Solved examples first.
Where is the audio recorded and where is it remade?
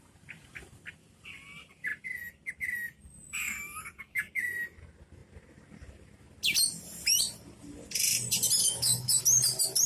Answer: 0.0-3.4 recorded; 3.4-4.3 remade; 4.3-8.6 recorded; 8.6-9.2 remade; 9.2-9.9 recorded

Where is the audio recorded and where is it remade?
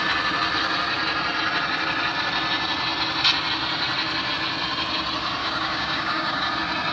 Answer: 0.0-5.4 recorded; 5.4-6.5 remade; 6.5-6.9 recorded